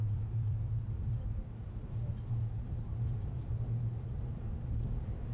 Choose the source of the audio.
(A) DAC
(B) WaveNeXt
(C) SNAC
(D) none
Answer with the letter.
D